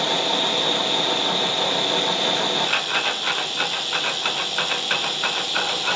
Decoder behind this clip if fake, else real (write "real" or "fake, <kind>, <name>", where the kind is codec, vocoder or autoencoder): real